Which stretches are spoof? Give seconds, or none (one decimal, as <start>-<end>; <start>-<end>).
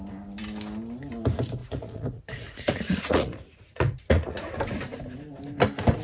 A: 1.6-4.5